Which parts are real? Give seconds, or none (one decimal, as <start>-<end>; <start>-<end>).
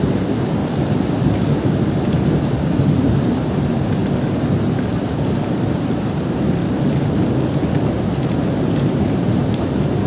0.6-2.7; 4.0-4.9; 6.6-7.7